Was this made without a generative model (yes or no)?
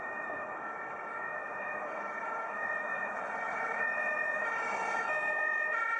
no